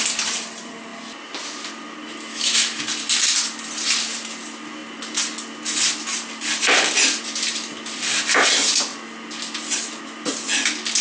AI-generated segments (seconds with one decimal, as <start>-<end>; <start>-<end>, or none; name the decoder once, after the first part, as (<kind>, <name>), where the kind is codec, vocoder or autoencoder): 2.3-2.8 (autoencoder, DAC-VAE)